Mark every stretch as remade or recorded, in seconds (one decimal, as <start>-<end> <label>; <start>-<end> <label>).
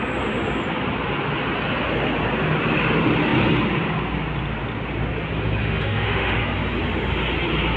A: 0.0-5.6 recorded; 5.6-6.4 remade; 6.4-7.8 recorded